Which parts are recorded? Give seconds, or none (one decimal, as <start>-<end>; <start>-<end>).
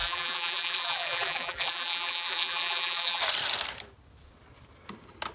3.2-5.3